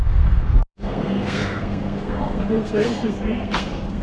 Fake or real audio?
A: fake